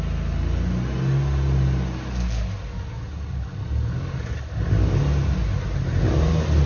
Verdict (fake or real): real